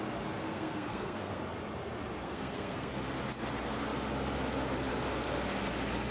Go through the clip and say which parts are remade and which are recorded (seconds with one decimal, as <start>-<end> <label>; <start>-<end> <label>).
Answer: 0.0-0.4 recorded; 0.4-1.4 remade; 1.4-2.2 recorded; 2.2-2.9 remade; 2.9-6.1 recorded